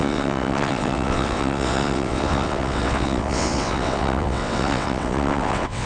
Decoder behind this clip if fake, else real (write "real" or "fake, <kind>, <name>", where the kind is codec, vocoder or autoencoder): fake, vocoder, WaveNeXt